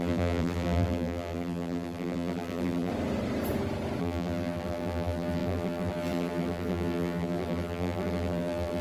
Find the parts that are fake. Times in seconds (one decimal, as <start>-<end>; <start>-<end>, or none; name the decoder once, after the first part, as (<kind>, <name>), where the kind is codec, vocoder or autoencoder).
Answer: 0.0-2.9 (vocoder, BigVGAN v2); 4.0-8.8